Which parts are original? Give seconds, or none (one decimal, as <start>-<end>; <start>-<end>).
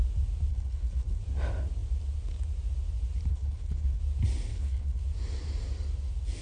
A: 0.0-0.5; 1.2-3.3; 4.0-4.5; 5.0-6.4